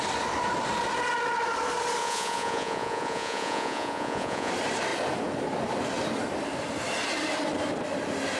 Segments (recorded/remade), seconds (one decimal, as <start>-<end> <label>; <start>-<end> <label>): 0.0-2.0 recorded; 2.0-4.5 remade; 4.5-8.4 recorded